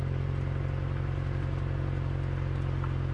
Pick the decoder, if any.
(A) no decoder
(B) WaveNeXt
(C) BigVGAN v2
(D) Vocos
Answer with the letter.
A